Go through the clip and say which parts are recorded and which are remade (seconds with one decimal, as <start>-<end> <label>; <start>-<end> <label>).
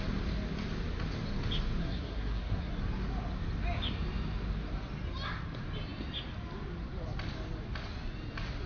0.0-1.8 recorded; 1.8-2.8 remade; 2.8-8.7 recorded